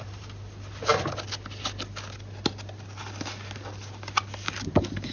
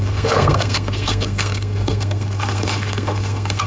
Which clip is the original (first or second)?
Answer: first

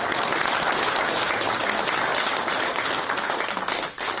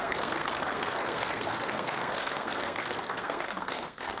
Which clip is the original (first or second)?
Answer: first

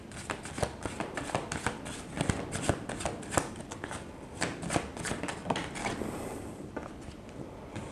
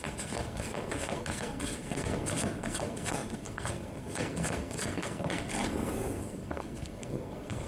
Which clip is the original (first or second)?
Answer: first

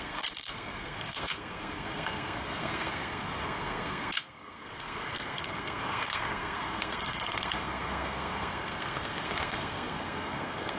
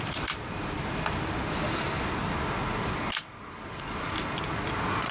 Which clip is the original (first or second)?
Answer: second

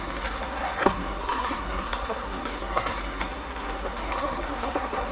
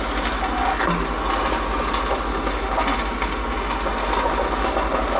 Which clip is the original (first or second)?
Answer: second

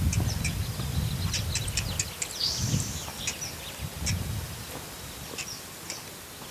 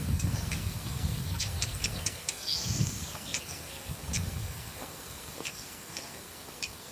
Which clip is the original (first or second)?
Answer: first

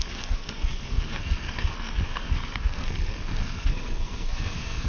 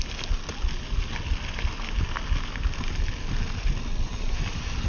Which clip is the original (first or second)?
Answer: second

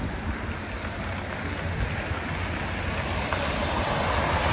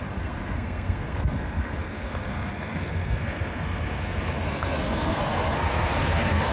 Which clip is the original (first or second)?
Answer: first